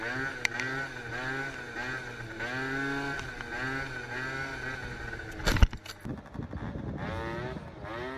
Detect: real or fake real